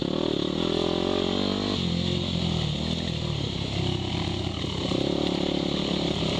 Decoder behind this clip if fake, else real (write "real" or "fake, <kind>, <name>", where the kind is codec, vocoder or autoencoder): real